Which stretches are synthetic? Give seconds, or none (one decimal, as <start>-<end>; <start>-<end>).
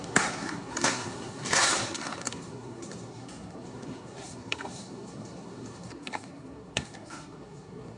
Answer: 0.0-8.0